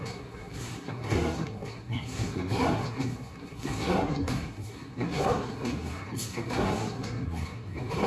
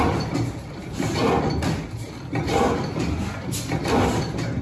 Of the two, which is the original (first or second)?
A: second